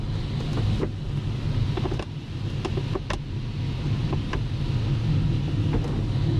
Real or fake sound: real